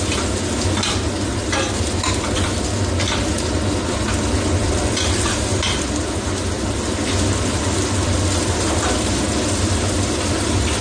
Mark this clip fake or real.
real